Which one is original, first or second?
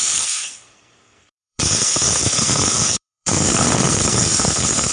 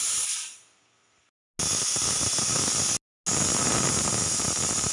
second